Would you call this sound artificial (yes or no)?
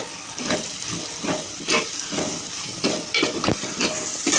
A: no